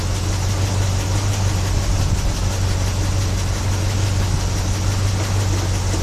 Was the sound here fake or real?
real